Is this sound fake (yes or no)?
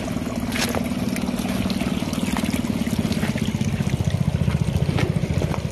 no